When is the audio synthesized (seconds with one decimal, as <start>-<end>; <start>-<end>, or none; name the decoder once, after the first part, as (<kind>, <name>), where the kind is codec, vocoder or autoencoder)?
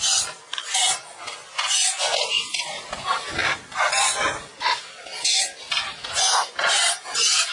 none